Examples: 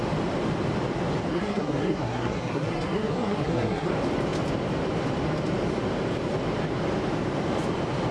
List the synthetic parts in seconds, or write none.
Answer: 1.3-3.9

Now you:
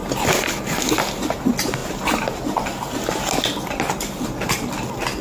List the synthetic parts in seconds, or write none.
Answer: none